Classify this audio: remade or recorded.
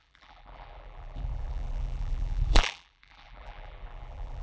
remade